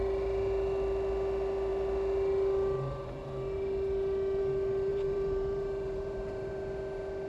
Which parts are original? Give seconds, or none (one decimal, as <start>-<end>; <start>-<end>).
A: 0.0-4.9; 6.5-7.3